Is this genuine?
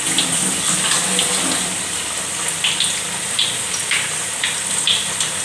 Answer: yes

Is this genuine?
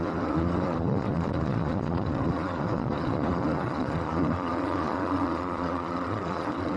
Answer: no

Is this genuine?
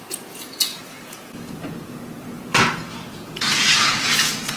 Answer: no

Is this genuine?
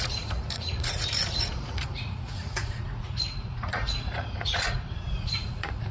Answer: no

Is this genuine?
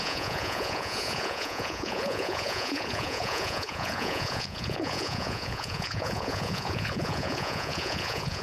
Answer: no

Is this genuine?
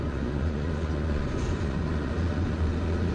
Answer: no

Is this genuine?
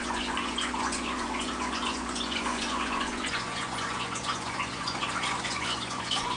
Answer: no